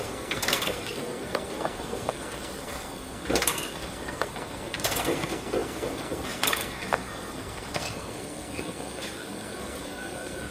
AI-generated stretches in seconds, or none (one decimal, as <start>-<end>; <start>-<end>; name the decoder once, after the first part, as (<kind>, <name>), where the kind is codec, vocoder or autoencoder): 0.0-10.5 (codec, SNAC)